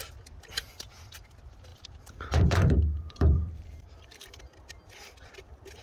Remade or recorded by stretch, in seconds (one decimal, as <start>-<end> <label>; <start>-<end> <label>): 0.0-1.7 recorded; 1.7-4.4 remade; 4.4-5.8 recorded